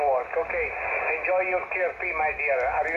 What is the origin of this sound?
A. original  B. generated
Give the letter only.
A